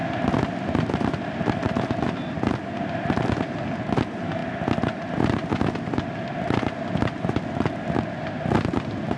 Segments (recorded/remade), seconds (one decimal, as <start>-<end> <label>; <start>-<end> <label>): 0.0-9.2 recorded